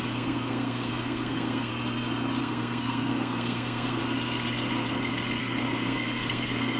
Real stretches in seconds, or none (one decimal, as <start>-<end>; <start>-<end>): 1.7-2.4; 4.0-5.4